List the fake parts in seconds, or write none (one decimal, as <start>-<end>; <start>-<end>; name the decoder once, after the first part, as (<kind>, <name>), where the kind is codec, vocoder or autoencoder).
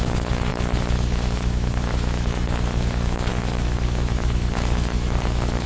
0.0-5.7 (autoencoder, DAC-VAE)